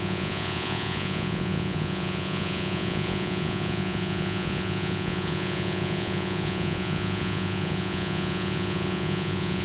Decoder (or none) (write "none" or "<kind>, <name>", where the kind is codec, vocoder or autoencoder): vocoder, Vocos